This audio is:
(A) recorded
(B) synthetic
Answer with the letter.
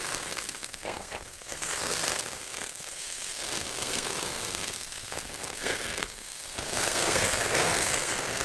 B